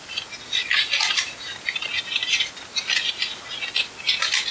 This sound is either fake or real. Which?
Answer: real